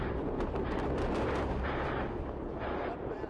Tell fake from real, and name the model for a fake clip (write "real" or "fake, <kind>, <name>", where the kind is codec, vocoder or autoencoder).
fake, vocoder, BigVGAN v2